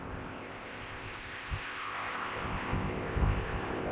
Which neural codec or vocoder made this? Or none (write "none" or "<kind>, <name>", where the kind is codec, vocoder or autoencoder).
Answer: codec, ZipCodec